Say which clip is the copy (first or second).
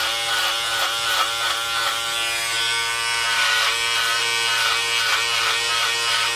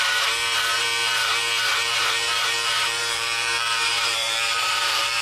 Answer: second